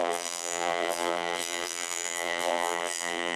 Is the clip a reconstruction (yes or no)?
yes